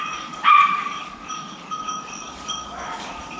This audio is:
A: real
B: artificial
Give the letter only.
B